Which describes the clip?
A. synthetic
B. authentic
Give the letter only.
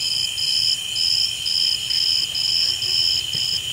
B